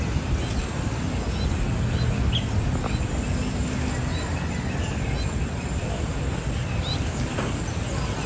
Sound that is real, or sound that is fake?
real